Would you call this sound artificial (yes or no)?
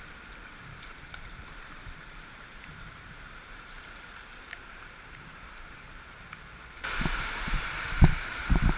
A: yes